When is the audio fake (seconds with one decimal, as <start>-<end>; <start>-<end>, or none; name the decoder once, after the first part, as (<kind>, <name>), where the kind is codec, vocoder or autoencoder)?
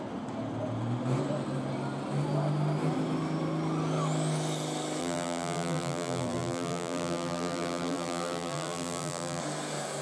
5.0-9.4 (vocoder, BigVGAN v2)